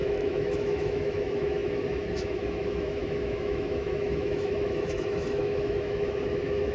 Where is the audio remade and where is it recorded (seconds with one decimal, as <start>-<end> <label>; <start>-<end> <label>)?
0.0-6.7 remade